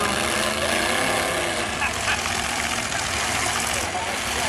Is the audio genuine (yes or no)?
yes